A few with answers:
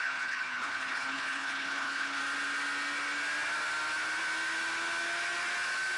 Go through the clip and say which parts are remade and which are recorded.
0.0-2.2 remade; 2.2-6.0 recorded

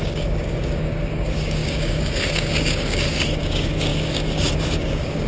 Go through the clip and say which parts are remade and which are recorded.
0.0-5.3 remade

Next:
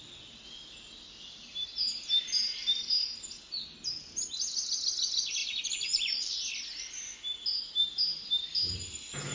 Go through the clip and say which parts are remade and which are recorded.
0.0-9.3 recorded

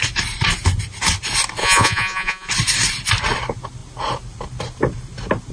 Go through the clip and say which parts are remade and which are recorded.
0.0-1.6 recorded; 1.6-2.5 remade; 2.5-5.5 recorded

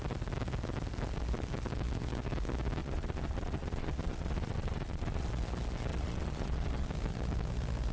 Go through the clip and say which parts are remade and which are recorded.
0.0-2.8 recorded; 2.8-5.3 remade; 5.3-5.9 recorded; 5.9-6.9 remade; 6.9-7.9 recorded

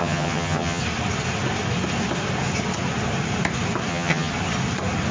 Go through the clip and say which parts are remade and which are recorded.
0.0-0.8 remade; 0.8-3.9 recorded; 3.9-4.3 remade; 4.3-5.1 recorded

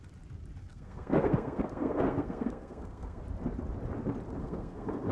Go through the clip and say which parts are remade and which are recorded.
0.0-0.6 recorded; 0.6-3.2 remade; 3.2-4.4 recorded; 4.4-5.1 remade

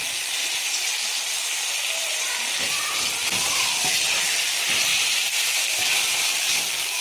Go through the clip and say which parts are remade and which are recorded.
0.0-4.9 recorded; 4.9-5.4 remade; 5.4-7.0 recorded